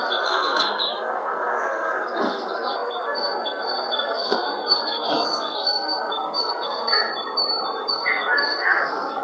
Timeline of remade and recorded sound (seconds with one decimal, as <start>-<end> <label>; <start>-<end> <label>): 0.0-7.1 remade; 7.1-7.9 recorded; 7.9-9.2 remade